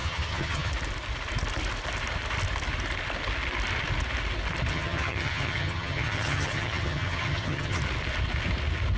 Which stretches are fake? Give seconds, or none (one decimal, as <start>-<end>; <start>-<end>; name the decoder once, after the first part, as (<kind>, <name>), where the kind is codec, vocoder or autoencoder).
0.0-0.7 (vocoder, HiFi-GAN); 4.7-7.8